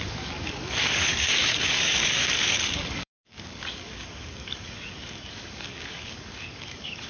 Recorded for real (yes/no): no